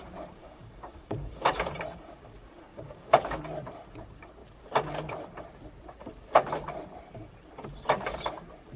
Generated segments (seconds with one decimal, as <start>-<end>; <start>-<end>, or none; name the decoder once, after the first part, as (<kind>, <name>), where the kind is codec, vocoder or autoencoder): 0.4-1.5 (codec, DAC); 2.7-3.4